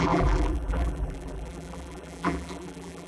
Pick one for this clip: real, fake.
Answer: fake